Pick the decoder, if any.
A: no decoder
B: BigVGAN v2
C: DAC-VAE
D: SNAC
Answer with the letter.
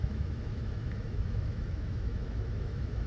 C